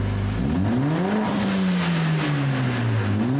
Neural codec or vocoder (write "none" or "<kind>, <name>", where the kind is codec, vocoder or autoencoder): none